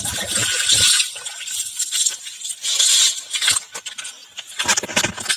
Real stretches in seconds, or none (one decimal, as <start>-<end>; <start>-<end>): 0.0-5.4